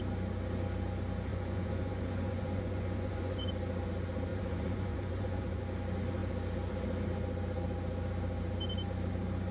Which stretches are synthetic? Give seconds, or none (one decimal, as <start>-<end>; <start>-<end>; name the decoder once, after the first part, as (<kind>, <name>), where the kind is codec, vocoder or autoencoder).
1.3-3.5 (vocoder, Vocos); 4.3-5.6